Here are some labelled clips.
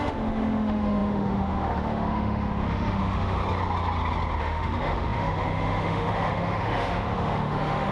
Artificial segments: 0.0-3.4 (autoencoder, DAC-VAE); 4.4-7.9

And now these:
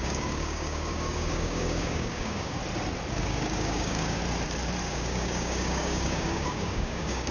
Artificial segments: 0.0-2.6 (codec, DAC); 3.2-4.2; 4.8-7.3

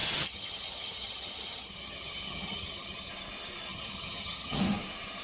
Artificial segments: 0.0-3.1 (vocoder, HiFi-GAN); 3.7-4.6

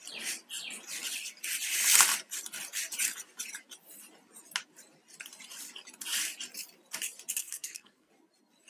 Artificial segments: 7.4-8.1 (codec, SNAC)

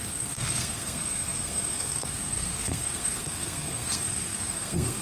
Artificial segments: 0.0-5.0 (codec, SNAC)

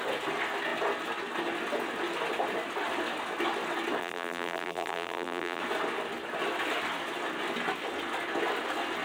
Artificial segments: 4.0-5.6 (vocoder, BigVGAN v2)

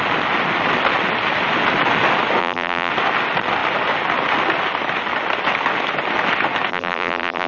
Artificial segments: 2.4-2.9 (vocoder, BigVGAN v2); 6.7-7.5

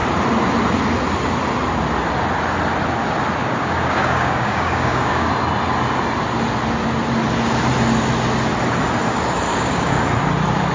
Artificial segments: 3.4-5.3 (codec, DAC); 9.5-10.0